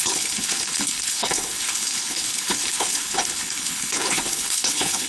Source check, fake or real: fake